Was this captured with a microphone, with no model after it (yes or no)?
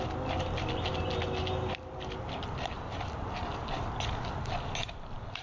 yes